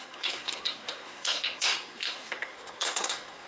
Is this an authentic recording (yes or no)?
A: no